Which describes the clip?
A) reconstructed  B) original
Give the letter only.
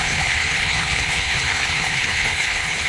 A